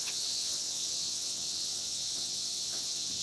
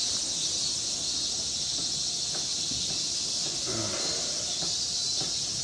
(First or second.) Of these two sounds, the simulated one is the first